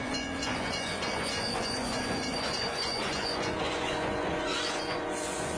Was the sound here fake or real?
fake